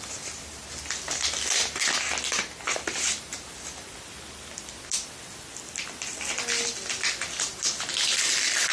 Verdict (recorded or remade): recorded